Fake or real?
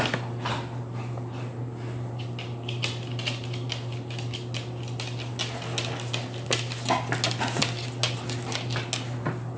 real